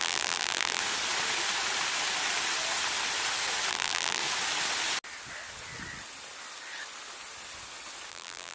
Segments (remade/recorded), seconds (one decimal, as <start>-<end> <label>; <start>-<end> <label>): 0.0-0.8 remade; 0.8-3.7 recorded; 3.7-4.2 remade; 4.2-8.1 recorded; 8.1-8.5 remade